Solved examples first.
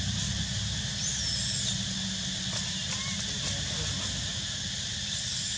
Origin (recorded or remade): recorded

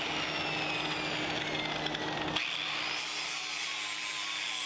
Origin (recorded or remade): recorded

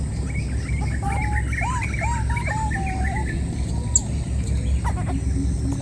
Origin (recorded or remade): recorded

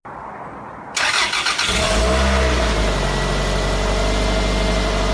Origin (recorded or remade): recorded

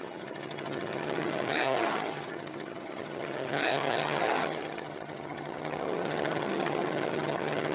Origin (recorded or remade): remade